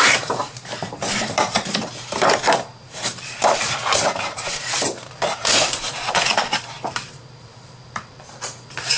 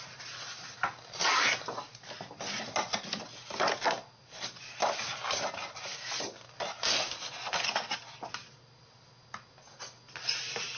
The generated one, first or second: first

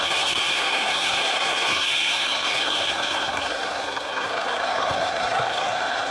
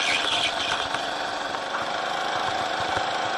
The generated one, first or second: first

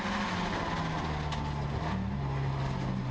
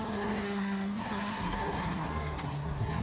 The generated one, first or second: second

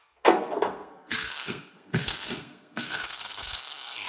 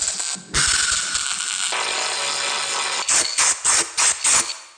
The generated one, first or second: first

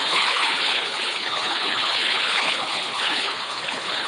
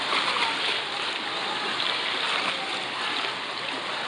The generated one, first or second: first